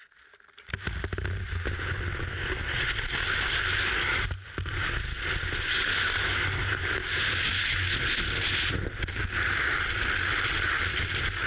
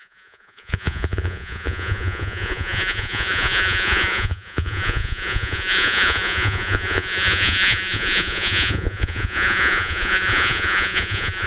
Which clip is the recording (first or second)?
first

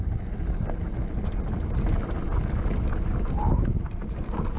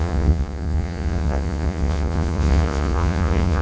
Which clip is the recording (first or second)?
first